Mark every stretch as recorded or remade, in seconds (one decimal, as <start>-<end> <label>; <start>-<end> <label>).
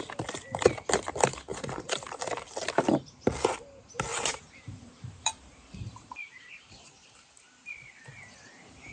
0.0-1.5 recorded; 1.5-2.2 remade; 2.2-4.1 recorded; 4.1-6.7 remade; 6.7-8.9 recorded